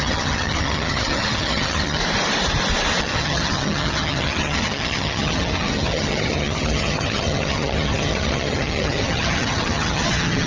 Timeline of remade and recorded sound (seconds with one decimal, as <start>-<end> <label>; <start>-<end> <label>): 0.0-2.0 remade; 2.0-3.0 recorded; 3.0-10.5 remade